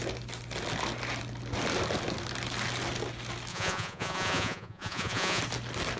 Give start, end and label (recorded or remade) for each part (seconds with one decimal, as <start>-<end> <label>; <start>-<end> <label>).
0.0-3.5 recorded; 3.5-5.4 remade; 5.4-6.0 recorded